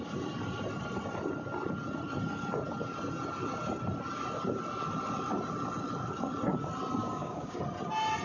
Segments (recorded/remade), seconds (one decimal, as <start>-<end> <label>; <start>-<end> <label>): 0.0-7.0 recorded; 7.0-7.6 remade; 7.6-8.2 recorded